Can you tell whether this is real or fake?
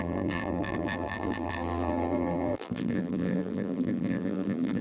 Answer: fake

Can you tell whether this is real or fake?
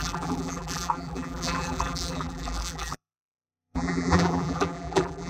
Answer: fake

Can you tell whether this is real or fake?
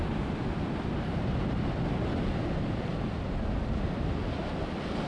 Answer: real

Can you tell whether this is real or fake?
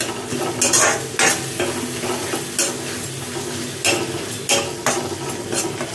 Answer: real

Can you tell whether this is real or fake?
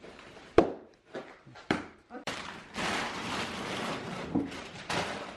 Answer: fake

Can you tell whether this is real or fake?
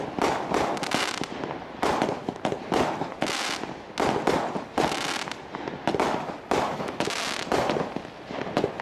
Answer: real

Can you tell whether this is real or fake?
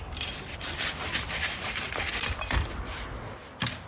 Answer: real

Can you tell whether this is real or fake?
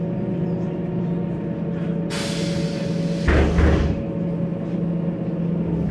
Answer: real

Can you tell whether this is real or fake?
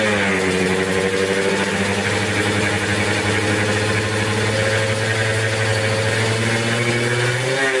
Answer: real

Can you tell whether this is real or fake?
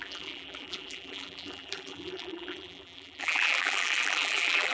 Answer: fake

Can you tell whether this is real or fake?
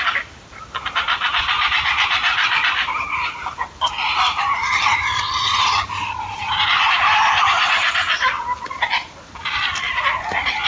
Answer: fake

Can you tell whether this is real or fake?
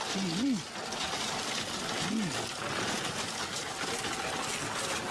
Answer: real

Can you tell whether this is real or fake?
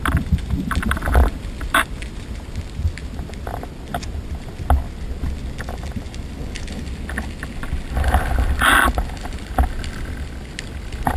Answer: real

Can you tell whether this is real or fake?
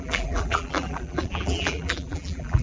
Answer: fake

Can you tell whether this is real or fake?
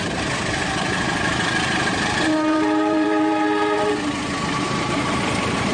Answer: fake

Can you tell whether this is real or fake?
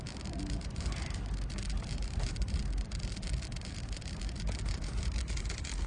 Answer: fake